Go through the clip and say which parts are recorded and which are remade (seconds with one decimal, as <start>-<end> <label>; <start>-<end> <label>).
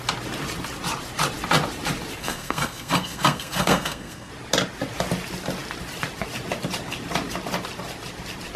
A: 0.0-2.2 recorded; 2.2-4.3 remade; 4.3-8.6 recorded